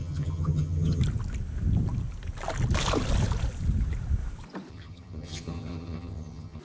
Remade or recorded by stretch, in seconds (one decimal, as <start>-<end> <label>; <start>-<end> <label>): 0.0-1.0 remade; 1.0-4.7 recorded; 4.7-6.6 remade